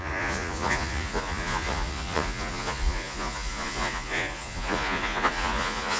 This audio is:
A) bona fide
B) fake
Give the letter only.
B